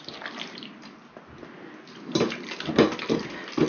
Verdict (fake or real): real